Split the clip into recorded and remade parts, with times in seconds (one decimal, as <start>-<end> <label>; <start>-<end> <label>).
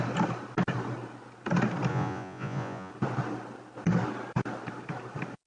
0.0-1.9 recorded; 1.9-2.9 remade; 2.9-5.5 recorded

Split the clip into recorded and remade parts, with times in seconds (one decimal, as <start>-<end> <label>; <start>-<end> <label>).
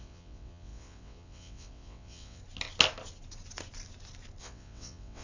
0.0-2.4 remade; 2.4-4.4 recorded; 4.4-5.2 remade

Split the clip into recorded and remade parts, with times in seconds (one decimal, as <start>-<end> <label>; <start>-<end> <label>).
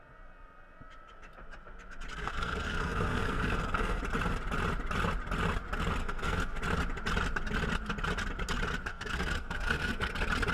0.0-2.1 recorded; 2.1-4.0 remade; 4.0-6.0 recorded; 6.0-6.6 remade; 6.6-8.9 recorded; 8.9-10.1 remade; 10.1-10.5 recorded